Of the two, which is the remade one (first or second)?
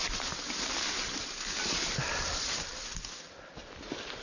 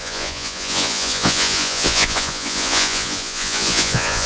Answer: second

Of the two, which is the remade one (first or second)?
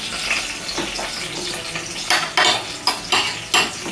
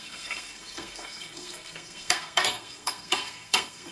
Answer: second